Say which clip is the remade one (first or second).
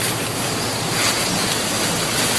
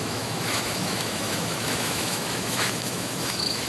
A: second